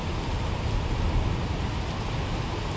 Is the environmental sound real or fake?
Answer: real